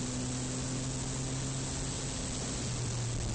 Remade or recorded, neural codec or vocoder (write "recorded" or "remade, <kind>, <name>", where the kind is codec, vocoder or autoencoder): recorded